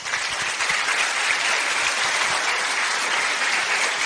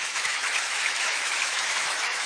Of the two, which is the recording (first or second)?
first